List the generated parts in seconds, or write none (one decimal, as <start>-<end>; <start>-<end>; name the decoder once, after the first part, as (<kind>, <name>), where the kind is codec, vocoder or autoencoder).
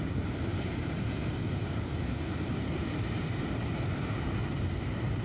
0.5-1.1 (vocoder, BigVGAN v2); 1.6-2.2; 2.8-5.2